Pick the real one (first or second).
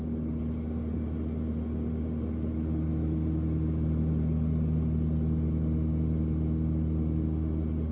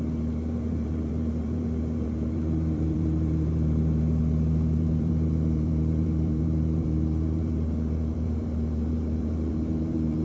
first